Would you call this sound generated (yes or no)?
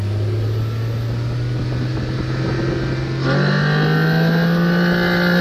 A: no